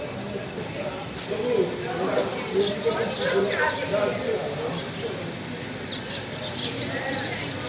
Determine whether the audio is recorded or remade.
recorded